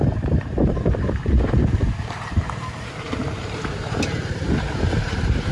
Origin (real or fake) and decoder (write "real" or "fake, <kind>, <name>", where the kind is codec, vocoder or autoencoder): fake, vocoder, BigVGAN v2